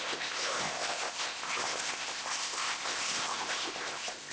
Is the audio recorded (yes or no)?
no